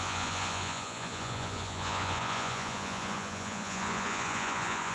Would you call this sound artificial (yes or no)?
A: yes